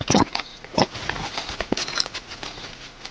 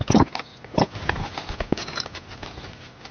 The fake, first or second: first